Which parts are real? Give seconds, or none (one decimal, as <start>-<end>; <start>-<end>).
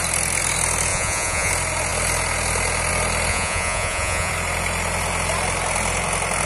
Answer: 0.0-0.9; 1.5-3.3; 4.3-6.5